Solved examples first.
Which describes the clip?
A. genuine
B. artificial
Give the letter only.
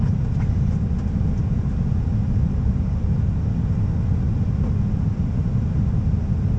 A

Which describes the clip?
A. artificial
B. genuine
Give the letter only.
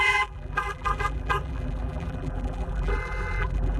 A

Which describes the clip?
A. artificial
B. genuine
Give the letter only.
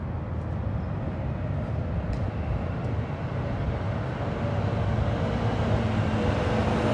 B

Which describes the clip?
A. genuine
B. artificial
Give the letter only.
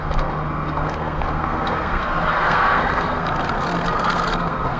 B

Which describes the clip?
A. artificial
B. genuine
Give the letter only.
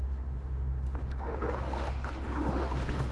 A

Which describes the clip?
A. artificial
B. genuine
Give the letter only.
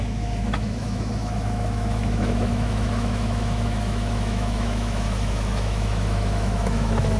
A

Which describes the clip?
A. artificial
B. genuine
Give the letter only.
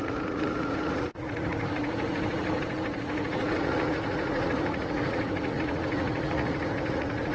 A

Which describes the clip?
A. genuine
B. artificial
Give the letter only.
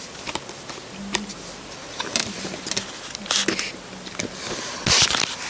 A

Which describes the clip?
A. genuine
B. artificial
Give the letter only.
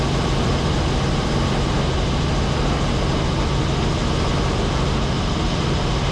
A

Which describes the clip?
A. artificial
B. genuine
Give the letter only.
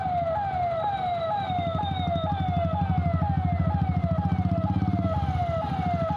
B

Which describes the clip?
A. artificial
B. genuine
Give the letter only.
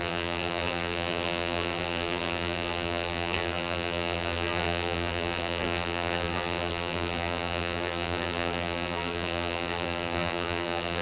A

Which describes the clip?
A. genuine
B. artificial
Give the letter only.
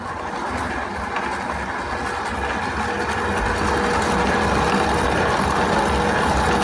A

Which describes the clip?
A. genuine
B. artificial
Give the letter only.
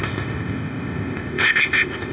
B